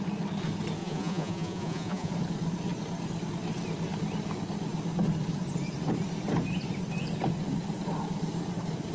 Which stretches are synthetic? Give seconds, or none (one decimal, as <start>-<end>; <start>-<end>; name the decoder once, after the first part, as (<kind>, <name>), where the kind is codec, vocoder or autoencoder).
0.8-2.1 (vocoder, Vocos)